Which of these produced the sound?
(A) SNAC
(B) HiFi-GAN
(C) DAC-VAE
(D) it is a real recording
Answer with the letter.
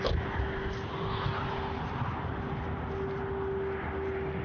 D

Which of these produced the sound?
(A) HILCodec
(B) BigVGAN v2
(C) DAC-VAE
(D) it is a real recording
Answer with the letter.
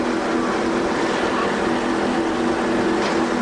D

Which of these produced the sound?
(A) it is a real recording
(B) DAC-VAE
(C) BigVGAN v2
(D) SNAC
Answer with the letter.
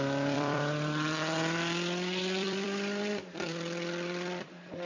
C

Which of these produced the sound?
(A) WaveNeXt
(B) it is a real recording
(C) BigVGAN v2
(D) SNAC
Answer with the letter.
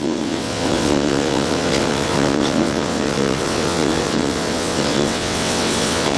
A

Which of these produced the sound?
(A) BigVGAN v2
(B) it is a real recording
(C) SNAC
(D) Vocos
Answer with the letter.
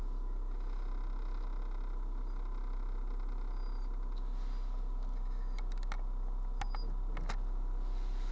B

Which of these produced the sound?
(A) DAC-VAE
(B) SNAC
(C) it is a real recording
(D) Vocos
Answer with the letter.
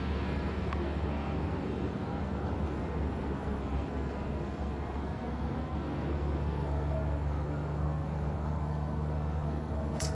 B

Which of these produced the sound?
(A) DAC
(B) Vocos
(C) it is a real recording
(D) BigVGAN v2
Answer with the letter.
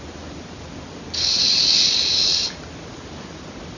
C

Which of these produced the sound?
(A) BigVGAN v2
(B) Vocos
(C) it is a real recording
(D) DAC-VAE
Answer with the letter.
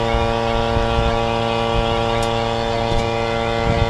C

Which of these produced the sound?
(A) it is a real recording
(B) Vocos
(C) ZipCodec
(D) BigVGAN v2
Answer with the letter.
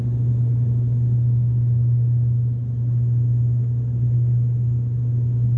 A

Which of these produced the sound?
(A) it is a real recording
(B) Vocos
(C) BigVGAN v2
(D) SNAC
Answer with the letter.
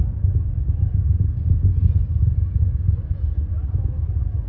A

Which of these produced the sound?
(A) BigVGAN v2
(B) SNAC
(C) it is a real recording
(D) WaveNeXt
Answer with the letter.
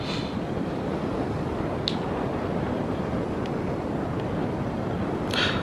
C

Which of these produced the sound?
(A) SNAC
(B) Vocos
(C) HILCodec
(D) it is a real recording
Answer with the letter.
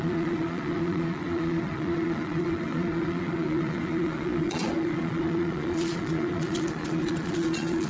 B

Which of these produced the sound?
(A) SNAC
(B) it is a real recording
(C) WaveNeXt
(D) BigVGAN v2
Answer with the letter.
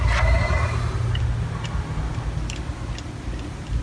B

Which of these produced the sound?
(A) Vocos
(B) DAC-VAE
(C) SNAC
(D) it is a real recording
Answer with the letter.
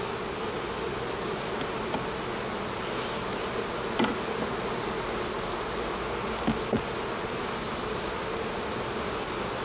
D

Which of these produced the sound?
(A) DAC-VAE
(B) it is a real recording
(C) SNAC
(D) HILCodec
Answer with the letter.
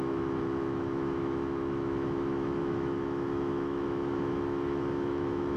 A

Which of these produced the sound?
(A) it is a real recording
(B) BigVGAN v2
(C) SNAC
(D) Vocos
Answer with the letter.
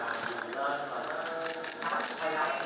A